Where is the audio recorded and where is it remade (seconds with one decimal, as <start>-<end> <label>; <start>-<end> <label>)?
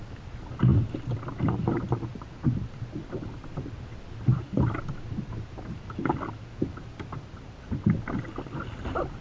0.0-9.2 recorded